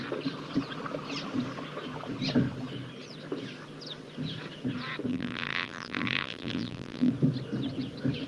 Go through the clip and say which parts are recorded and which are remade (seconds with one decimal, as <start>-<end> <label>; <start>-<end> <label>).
0.0-5.1 recorded; 5.1-7.1 remade; 7.1-8.3 recorded